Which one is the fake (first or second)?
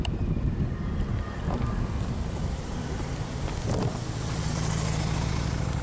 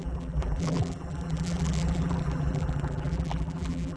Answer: second